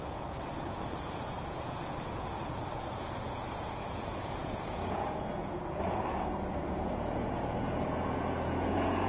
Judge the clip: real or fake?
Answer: fake